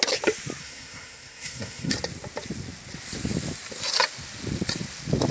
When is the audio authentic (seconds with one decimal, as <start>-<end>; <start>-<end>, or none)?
0.0-0.6; 1.9-5.3